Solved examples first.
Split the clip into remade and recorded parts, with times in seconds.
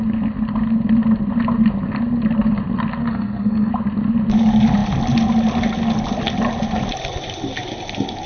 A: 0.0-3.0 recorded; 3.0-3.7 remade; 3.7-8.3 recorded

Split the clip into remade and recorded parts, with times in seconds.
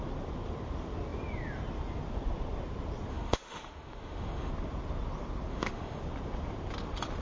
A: 0.0-3.1 recorded; 3.1-4.5 remade; 4.5-5.5 recorded; 5.5-6.0 remade; 6.0-7.2 recorded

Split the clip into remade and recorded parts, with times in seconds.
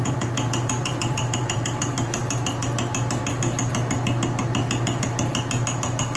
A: 0.0-2.2 remade; 2.2-6.2 recorded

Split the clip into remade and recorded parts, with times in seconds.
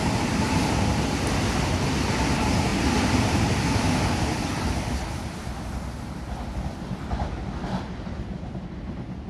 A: 0.0-2.7 recorded; 2.7-3.7 remade; 3.7-9.3 recorded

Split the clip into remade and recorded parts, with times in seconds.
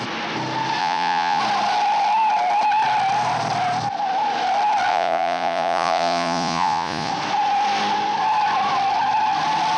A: 0.0-0.8 recorded; 0.8-1.4 remade; 1.4-4.9 recorded; 4.9-7.1 remade; 7.1-9.8 recorded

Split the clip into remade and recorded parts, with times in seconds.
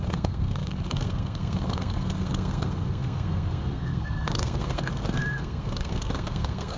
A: 0.0-6.8 remade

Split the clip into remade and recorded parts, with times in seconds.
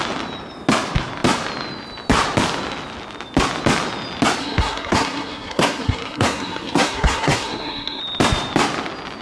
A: 0.0-4.4 recorded; 4.4-8.0 remade; 8.0-9.2 recorded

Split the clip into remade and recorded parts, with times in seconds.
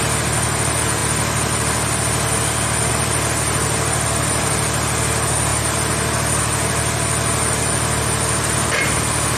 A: 0.0-9.4 recorded